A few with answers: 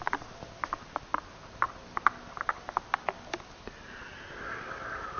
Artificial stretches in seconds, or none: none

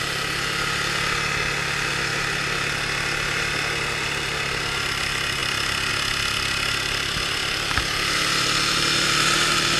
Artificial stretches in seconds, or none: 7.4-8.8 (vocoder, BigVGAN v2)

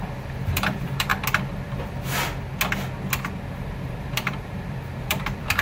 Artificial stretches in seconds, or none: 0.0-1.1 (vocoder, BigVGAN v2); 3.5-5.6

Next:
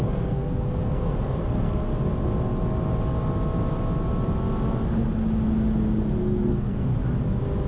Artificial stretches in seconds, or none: 0.0-1.9 (codec, SNAC); 6.2-6.9